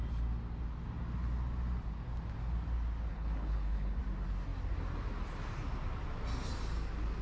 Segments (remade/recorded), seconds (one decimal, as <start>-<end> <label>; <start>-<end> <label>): 0.0-3.1 recorded; 3.1-4.0 remade; 4.0-7.2 recorded

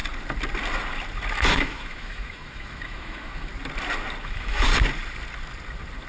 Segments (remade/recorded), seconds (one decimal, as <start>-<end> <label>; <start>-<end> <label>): 0.0-1.5 recorded; 1.5-3.5 remade; 3.5-4.2 recorded; 4.2-4.7 remade; 4.7-6.1 recorded

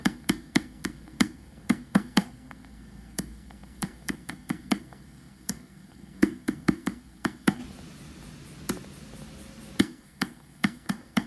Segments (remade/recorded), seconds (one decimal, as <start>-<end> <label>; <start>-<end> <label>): 0.0-7.6 remade; 7.6-9.8 recorded; 9.8-11.3 remade

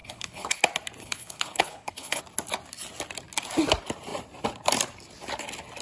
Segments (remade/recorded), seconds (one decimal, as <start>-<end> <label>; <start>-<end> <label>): 0.0-0.6 remade; 0.6-1.0 recorded; 1.0-2.2 remade; 2.2-5.8 recorded

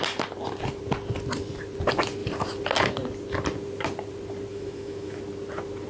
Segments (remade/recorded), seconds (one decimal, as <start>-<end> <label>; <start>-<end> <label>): 0.0-4.5 recorded; 4.5-5.2 remade; 5.2-5.9 recorded